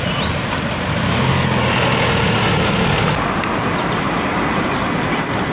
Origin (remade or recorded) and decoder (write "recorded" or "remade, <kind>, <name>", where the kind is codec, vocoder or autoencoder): recorded